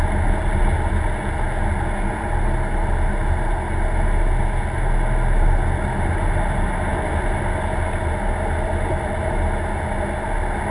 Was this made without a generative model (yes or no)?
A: yes